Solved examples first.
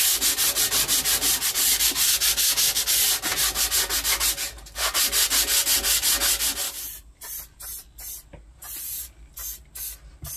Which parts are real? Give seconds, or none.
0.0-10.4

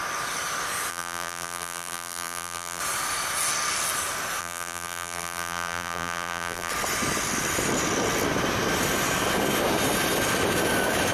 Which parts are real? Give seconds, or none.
0.0-0.9; 2.8-4.4; 6.7-11.1

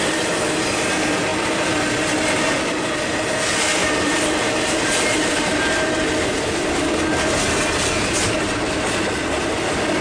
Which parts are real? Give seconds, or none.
0.0-3.8; 6.5-10.0

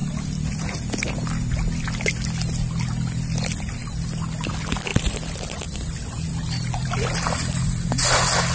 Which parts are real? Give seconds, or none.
0.6-3.8; 4.5-4.9; 7.9-8.5

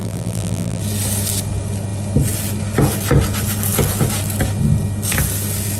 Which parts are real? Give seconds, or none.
0.8-5.8